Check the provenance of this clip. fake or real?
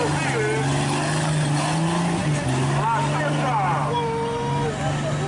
real